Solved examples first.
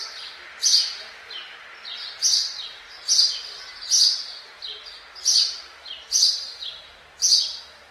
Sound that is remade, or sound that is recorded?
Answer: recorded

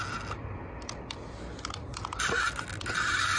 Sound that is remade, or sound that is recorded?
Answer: recorded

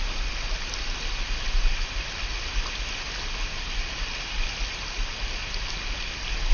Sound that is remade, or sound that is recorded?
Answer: recorded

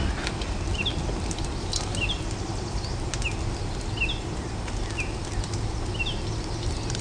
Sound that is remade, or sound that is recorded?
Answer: recorded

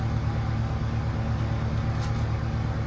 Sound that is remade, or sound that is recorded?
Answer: recorded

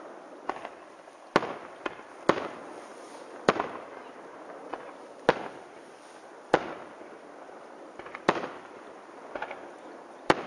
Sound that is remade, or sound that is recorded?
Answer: recorded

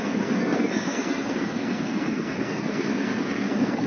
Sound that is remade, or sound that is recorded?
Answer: remade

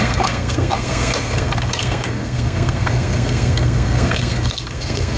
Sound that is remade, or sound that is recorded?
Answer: remade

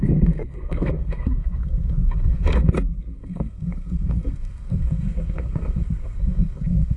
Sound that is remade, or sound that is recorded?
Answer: remade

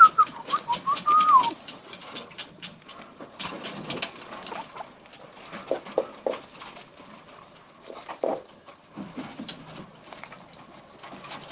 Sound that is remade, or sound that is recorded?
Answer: recorded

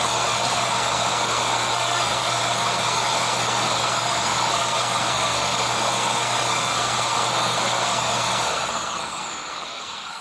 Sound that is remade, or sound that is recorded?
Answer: remade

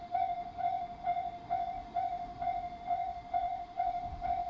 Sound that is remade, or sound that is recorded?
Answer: remade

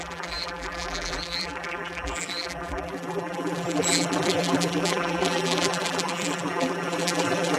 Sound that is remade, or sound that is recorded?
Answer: remade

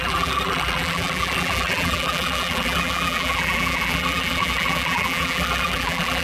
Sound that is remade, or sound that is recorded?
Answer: remade